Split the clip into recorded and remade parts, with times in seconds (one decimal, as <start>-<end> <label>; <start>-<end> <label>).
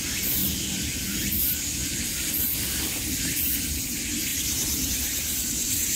0.0-4.3 recorded; 4.3-6.0 remade